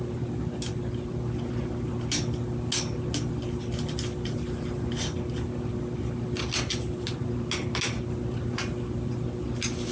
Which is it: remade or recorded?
recorded